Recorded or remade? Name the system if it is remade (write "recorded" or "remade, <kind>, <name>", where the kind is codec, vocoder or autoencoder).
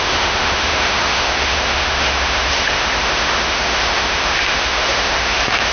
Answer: remade, autoencoder, DAC-VAE